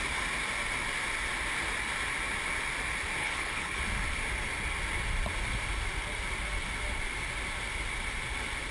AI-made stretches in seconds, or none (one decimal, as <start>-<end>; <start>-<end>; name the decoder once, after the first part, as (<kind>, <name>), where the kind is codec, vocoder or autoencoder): 3.2-3.8 (codec, HILCodec)